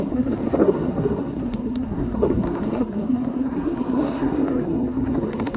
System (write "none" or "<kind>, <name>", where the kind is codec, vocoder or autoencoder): codec, SNAC